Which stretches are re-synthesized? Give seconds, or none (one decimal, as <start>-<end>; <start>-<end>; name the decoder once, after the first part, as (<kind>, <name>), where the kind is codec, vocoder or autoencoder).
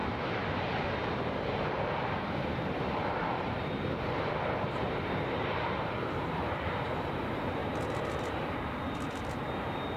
1.5-10.0 (vocoder, BigVGAN v2)